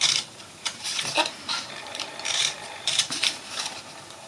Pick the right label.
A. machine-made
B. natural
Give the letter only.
A